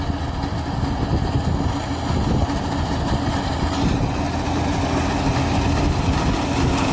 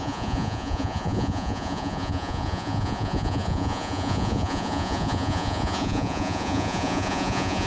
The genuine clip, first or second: first